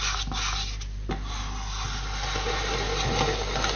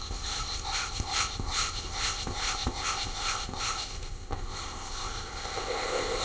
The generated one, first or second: second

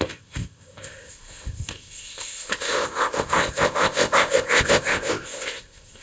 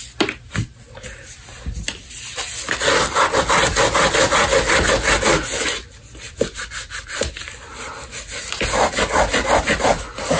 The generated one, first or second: first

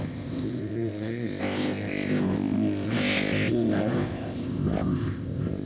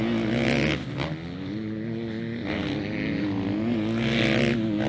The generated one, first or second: first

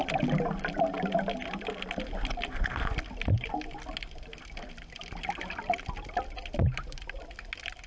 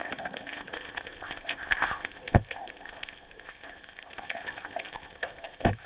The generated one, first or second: second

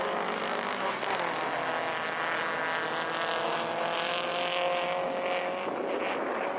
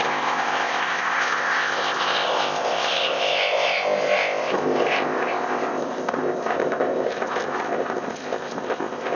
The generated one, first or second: second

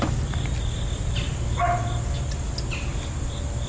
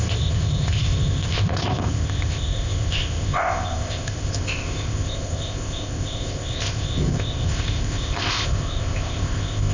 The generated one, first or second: second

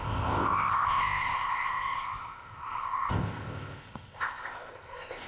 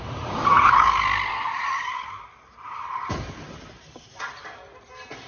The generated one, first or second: first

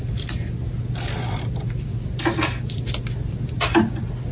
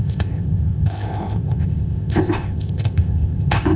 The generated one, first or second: second